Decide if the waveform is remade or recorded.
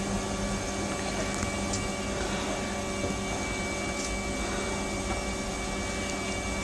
recorded